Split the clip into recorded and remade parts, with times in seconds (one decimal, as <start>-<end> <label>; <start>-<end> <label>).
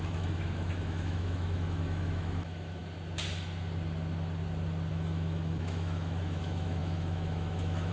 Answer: 0.0-2.8 remade; 2.8-4.9 recorded; 4.9-7.9 remade